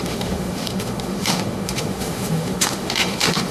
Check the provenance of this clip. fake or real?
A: fake